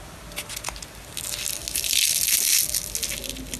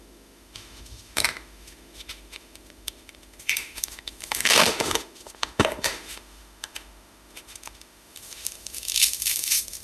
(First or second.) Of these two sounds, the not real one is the second